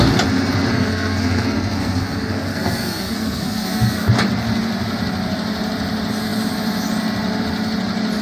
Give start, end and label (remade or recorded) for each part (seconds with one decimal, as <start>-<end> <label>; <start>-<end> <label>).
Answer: 0.0-0.7 recorded; 0.7-4.1 remade; 4.1-8.2 recorded